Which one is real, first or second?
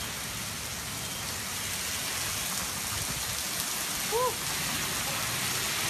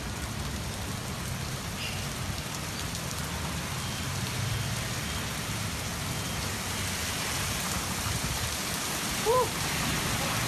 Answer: first